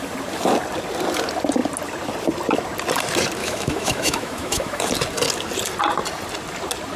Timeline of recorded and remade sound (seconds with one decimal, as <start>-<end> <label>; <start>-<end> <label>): 0.0-3.4 recorded; 3.4-4.9 remade; 4.9-7.0 recorded